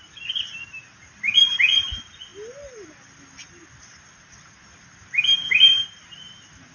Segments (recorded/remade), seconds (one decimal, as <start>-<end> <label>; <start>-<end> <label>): 0.0-6.7 recorded